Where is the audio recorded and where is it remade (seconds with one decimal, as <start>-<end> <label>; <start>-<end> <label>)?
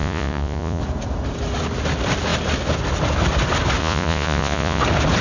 0.0-0.8 remade; 0.8-3.8 recorded; 3.8-4.8 remade; 4.8-5.2 recorded